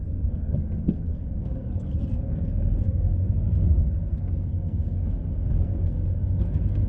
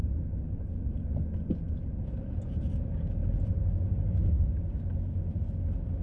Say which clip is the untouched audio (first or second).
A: second